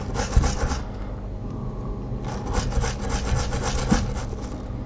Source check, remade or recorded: recorded